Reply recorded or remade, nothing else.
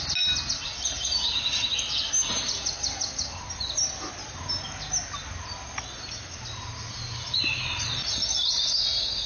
recorded